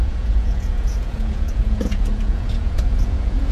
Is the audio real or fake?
fake